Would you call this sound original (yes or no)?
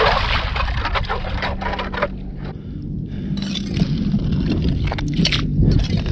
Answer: yes